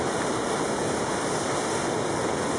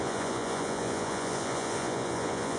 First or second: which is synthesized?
second